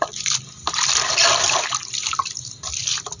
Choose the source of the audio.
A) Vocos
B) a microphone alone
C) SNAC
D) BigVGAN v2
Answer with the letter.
B